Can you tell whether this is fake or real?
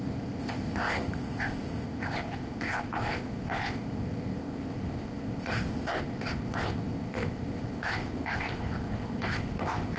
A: fake